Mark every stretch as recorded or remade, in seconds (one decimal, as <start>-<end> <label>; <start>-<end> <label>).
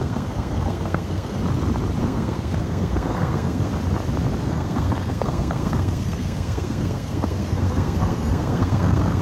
0.0-1.4 remade; 1.4-2.0 recorded; 2.0-3.7 remade; 3.7-4.4 recorded; 4.4-9.2 remade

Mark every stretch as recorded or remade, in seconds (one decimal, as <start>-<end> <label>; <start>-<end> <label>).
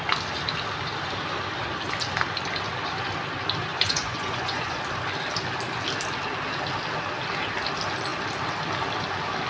0.0-3.7 recorded; 3.7-4.8 remade; 4.8-9.5 recorded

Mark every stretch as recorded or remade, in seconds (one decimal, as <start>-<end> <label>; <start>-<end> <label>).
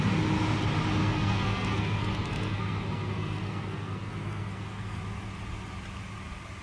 0.0-1.0 recorded; 1.0-5.0 remade; 5.0-6.6 recorded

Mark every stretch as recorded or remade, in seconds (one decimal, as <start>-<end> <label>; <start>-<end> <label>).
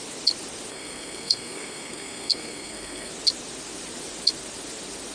0.0-0.7 recorded; 0.7-3.1 remade; 3.1-5.1 recorded